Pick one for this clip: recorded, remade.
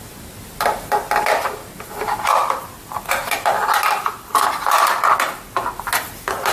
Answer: recorded